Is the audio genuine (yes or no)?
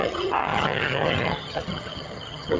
no